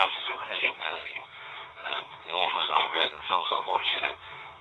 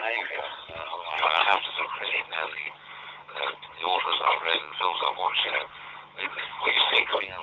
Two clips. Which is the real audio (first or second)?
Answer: second